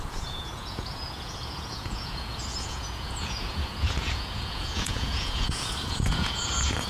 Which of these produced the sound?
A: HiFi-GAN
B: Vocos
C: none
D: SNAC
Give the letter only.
B